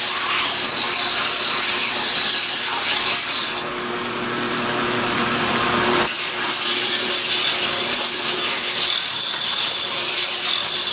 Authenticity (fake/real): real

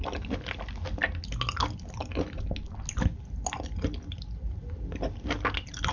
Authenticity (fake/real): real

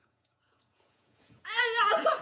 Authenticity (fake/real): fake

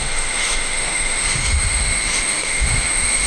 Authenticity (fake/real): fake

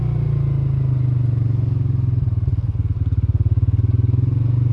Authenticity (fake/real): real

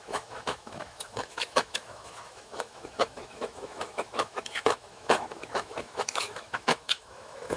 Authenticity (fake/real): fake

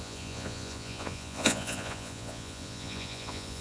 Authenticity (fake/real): fake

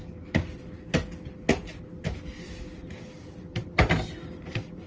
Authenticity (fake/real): real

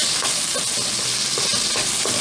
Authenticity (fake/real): real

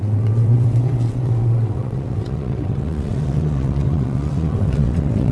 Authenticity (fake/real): fake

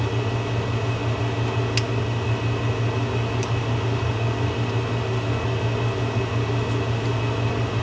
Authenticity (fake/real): real